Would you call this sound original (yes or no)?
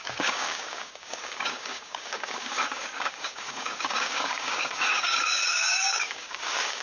no